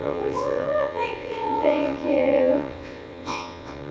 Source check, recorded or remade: remade